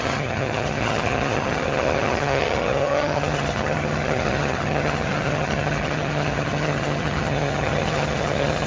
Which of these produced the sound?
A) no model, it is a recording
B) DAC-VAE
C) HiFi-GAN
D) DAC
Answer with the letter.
C